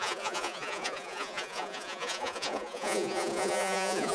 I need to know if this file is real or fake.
fake